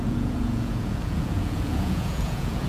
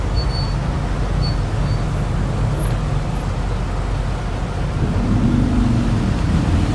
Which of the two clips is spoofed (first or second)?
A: first